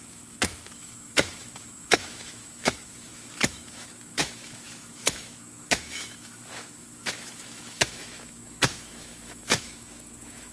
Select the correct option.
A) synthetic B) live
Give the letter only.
A